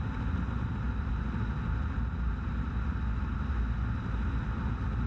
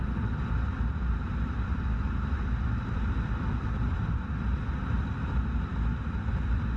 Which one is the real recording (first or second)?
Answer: first